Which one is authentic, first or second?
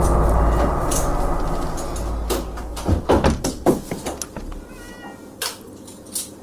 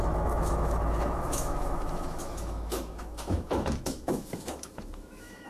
first